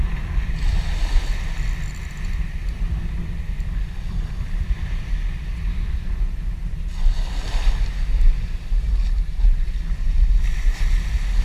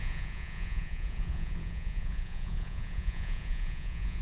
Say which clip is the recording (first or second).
first